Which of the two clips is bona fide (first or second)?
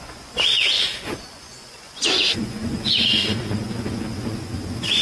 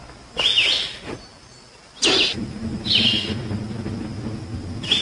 second